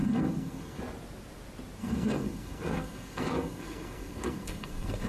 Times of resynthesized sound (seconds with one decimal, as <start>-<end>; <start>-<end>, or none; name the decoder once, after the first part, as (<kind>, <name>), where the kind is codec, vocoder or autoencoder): 0.0-0.8 (codec, SNAC); 1.8-5.1